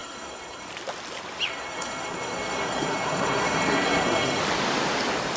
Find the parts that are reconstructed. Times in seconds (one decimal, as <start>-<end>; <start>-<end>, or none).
0.0-0.7; 1.5-4.4